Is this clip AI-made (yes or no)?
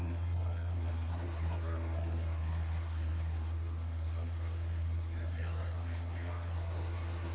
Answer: yes